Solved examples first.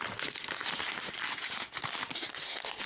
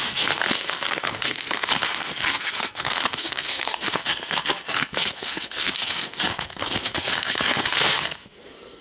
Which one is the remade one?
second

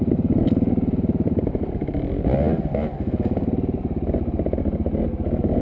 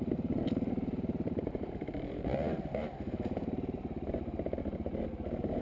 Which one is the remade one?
second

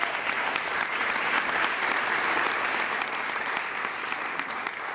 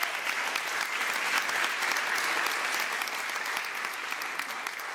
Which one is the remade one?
first